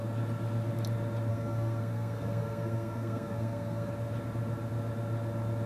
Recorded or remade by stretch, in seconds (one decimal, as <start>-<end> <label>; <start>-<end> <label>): 0.0-1.3 recorded; 1.3-3.9 remade; 3.9-5.7 recorded